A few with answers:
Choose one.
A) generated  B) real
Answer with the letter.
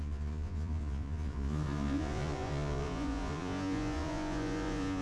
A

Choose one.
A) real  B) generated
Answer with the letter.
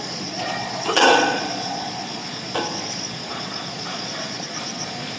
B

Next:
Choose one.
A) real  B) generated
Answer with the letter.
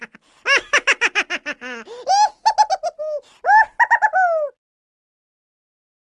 A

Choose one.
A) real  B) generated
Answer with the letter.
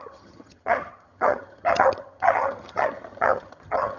B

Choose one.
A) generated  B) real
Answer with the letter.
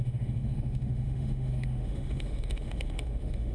A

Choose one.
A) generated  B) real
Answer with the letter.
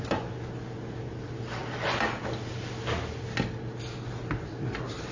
B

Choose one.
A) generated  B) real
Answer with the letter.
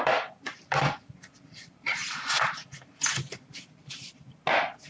B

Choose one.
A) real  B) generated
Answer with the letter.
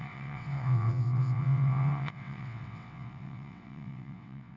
B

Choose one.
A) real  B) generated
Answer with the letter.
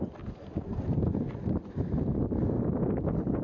A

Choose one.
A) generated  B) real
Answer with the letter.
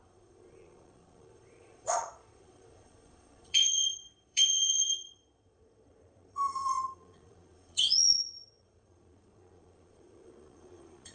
A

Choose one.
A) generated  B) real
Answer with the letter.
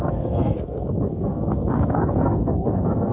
A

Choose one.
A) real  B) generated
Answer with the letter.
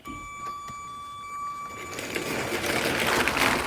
A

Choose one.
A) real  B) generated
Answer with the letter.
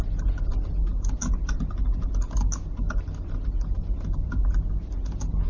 A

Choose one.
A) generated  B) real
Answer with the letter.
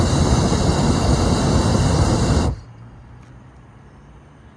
B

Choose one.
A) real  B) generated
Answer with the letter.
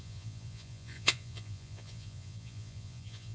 B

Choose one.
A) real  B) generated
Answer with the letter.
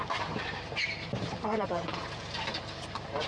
B